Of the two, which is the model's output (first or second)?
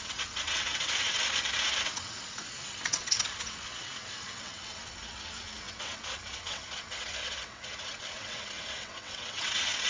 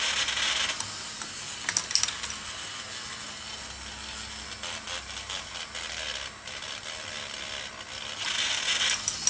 first